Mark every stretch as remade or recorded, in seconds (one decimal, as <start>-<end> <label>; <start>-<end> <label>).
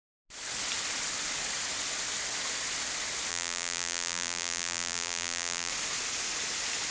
0.0-3.3 recorded; 3.3-5.7 remade; 5.7-6.9 recorded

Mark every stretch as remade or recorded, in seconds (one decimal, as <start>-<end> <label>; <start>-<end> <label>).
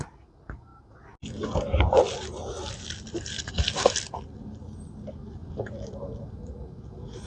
0.0-5.4 recorded; 5.4-6.5 remade; 6.5-7.3 recorded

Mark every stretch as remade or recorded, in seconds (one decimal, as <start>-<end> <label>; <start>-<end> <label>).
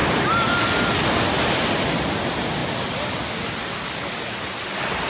0.0-0.7 remade; 0.7-5.1 recorded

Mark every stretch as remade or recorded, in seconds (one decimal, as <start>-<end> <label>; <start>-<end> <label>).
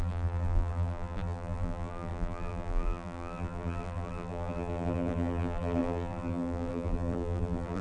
0.0-7.8 remade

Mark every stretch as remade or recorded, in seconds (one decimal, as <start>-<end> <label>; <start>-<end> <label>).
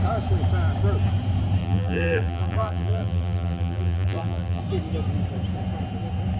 0.0-1.6 recorded; 1.6-4.6 remade; 4.6-6.4 recorded